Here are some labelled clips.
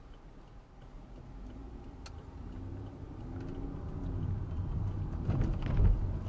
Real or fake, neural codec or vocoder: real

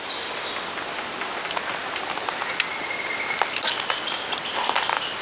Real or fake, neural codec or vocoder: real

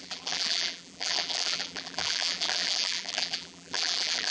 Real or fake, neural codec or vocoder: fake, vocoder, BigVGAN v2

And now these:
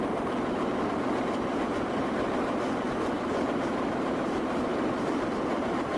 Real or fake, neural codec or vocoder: fake, vocoder, BigVGAN v2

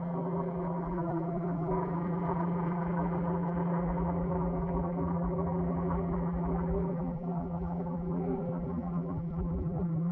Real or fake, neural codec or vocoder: fake, vocoder, BigVGAN v2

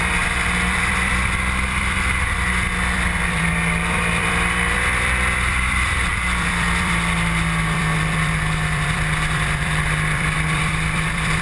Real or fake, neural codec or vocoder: fake, vocoder, BigVGAN v2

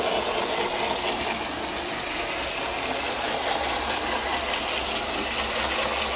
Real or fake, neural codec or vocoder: real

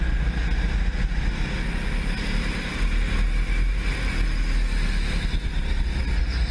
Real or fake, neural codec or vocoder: real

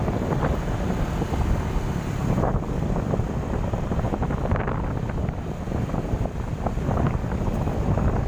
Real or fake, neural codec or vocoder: real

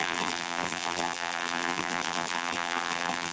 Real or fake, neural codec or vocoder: fake, vocoder, BigVGAN v2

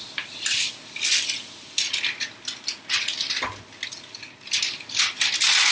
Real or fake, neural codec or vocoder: real